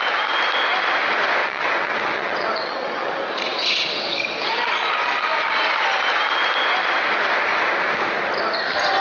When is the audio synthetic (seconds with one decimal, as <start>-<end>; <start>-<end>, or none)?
1.4-3.1